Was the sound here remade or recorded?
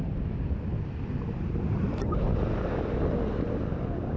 recorded